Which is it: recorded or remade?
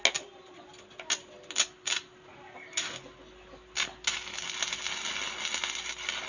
recorded